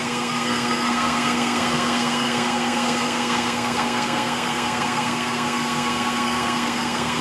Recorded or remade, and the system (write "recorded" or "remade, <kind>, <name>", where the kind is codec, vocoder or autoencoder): remade, codec, SNAC